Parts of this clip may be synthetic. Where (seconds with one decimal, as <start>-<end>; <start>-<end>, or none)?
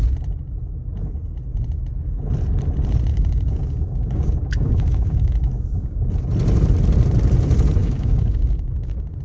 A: 3.1-6.1; 7.8-9.2